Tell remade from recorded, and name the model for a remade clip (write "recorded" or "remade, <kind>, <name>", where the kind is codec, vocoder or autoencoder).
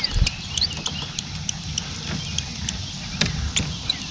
recorded